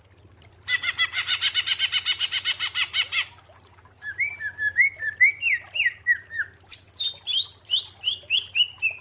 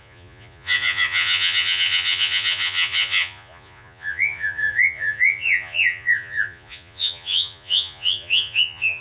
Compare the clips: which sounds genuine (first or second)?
first